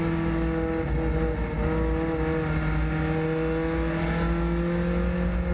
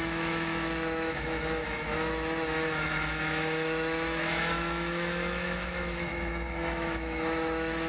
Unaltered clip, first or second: first